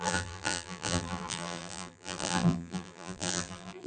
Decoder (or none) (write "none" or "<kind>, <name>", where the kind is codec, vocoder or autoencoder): vocoder, BigVGAN v2